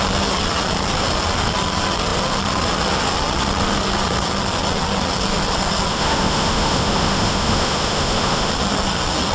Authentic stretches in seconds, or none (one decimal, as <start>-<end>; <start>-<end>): 0.0-5.9; 8.5-9.3